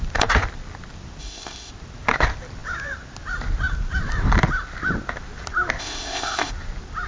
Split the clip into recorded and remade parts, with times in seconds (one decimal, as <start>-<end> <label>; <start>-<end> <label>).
0.0-1.2 recorded; 1.2-1.7 remade; 1.7-5.8 recorded; 5.8-6.5 remade; 6.5-7.1 recorded